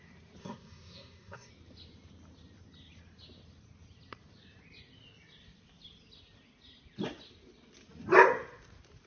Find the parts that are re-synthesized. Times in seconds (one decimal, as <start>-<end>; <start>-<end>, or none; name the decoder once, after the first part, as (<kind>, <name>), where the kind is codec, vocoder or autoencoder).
0.4-1.5 (codec, SNAC)